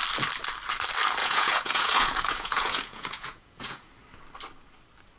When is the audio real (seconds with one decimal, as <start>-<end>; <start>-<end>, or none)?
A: 0.0-1.2; 3.9-5.2